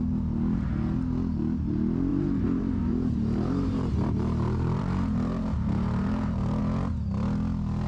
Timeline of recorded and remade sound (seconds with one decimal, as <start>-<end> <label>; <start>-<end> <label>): 0.0-2.1 recorded; 2.1-6.6 remade; 6.6-7.9 recorded